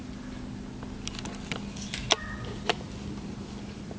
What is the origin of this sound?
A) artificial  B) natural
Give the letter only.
B